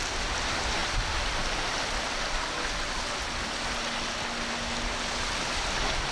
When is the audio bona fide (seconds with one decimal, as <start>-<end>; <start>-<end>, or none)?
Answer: 0.0-6.1